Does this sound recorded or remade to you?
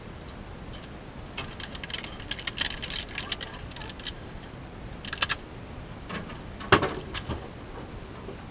recorded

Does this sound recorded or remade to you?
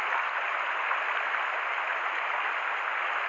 recorded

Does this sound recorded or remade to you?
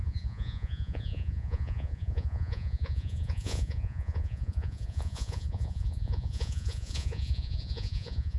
remade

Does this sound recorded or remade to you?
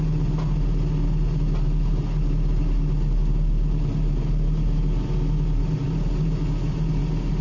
recorded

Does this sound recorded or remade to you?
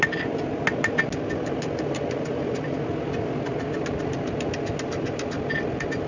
recorded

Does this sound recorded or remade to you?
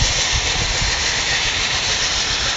recorded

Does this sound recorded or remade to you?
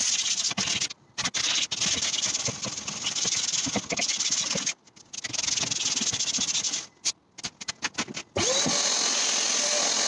recorded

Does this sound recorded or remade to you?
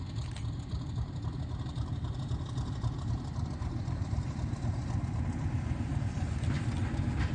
recorded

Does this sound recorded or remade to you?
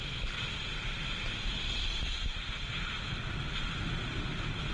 recorded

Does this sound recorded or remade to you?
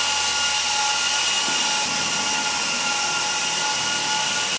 recorded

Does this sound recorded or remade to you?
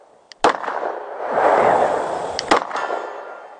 recorded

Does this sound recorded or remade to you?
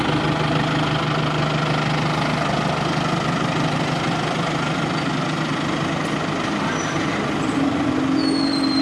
recorded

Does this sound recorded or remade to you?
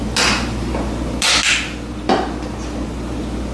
recorded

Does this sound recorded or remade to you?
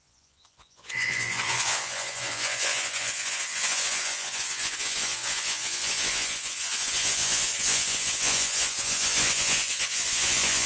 remade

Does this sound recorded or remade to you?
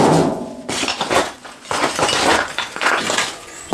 remade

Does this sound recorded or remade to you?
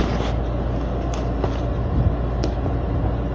recorded